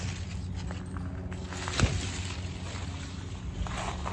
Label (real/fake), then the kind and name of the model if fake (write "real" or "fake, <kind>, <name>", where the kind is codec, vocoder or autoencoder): real